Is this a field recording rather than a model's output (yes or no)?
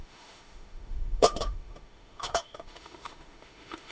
no